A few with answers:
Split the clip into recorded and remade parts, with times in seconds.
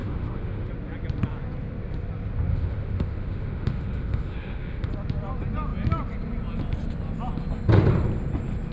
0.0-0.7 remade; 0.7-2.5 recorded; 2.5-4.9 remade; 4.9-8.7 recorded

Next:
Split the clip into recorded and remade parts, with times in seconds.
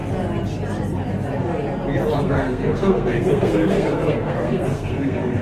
0.0-2.2 recorded; 2.2-5.4 remade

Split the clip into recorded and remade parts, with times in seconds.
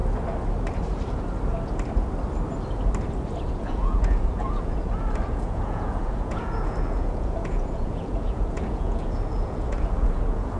0.0-3.4 recorded; 3.4-10.6 remade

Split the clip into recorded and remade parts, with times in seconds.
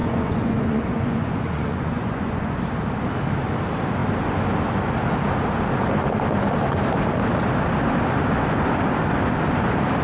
0.0-2.6 remade; 2.6-10.0 recorded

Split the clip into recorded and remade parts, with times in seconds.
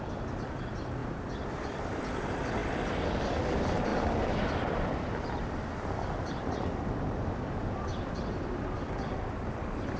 0.0-2.6 remade; 2.6-3.2 recorded; 3.2-10.0 remade